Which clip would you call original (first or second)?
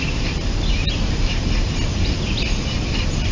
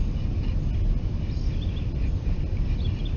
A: second